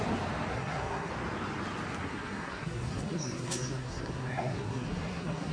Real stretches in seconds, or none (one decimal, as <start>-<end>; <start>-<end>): 0.0-0.5; 1.1-2.0